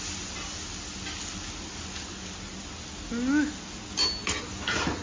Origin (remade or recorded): recorded